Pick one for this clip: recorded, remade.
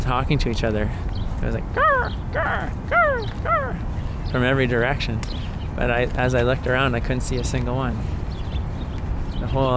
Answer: recorded